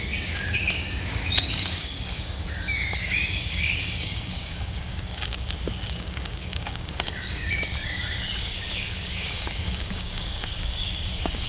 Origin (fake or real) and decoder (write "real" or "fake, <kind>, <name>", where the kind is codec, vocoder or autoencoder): fake, codec, DAC